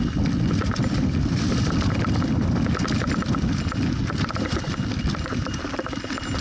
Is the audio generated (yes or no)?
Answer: no